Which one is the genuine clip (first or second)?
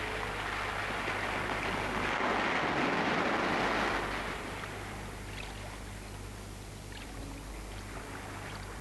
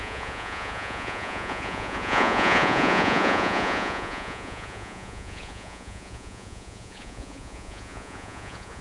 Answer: first